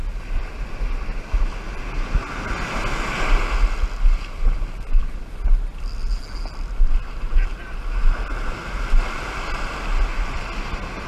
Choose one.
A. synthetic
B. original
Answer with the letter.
B